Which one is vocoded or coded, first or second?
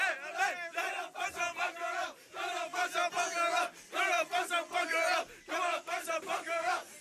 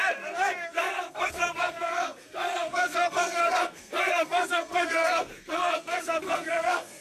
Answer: second